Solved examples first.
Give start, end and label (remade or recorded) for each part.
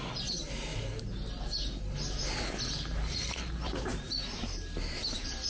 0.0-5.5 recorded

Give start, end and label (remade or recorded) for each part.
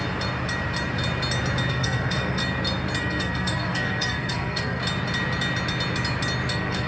0.0-1.7 recorded; 1.7-2.4 remade; 2.4-3.0 recorded; 3.0-4.8 remade; 4.8-6.5 recorded; 6.5-6.9 remade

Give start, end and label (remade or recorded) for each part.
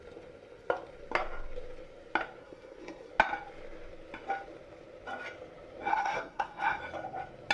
0.0-2.4 recorded; 2.4-3.1 remade; 3.1-5.9 recorded; 5.9-6.8 remade; 6.8-7.5 recorded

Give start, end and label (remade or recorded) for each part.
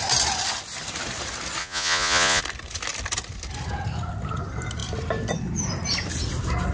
0.0-1.6 recorded; 1.6-2.4 remade; 2.4-6.7 recorded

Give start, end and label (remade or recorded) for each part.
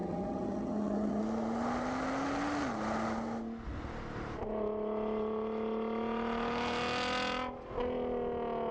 0.0-1.2 remade; 1.2-8.7 recorded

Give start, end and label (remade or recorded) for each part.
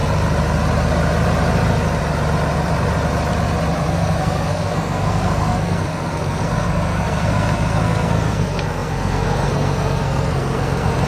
0.0-3.9 recorded; 3.9-11.1 remade